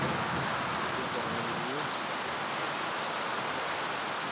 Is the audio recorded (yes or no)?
yes